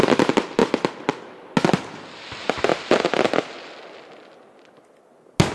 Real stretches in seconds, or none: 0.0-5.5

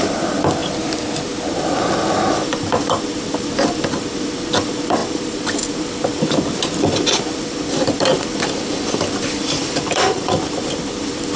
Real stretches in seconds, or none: 0.6-1.5

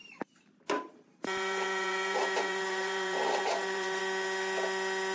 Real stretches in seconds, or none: 0.5-1.1; 4.0-5.1

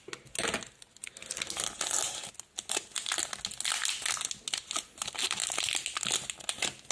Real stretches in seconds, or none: 0.0-6.9

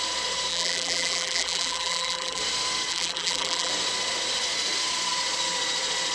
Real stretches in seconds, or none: 0.0-0.5; 2.4-2.9; 3.7-6.1